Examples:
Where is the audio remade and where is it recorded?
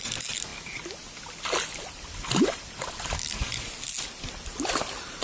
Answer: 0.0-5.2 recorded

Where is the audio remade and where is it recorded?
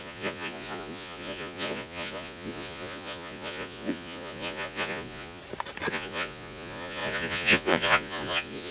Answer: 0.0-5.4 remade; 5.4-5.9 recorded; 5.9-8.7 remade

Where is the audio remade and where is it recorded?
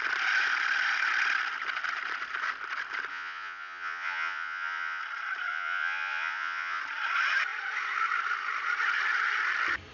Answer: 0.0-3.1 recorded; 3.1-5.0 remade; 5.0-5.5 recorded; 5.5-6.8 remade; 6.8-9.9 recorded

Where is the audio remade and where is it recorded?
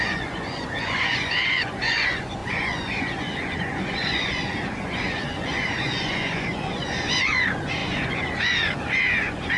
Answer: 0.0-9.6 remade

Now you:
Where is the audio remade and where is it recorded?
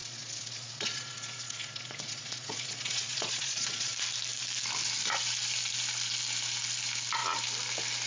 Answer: 0.0-3.9 remade; 3.9-8.1 recorded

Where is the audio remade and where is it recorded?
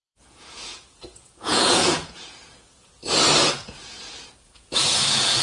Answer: 0.0-3.0 remade; 3.0-3.5 recorded; 3.5-5.4 remade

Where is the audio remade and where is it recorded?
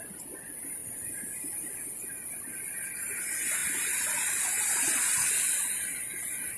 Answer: 0.0-6.6 recorded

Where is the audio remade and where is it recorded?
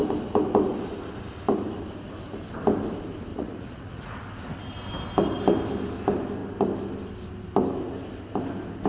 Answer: 0.0-3.3 recorded; 3.3-4.2 remade; 4.2-8.9 recorded